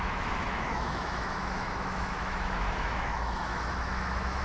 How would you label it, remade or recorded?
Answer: remade